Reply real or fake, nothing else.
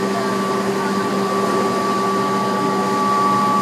real